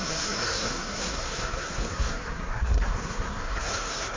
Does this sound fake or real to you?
fake